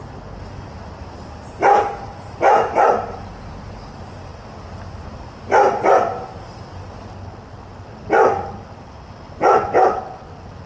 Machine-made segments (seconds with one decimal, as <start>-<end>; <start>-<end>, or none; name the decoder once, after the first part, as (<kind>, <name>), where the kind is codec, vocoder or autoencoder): none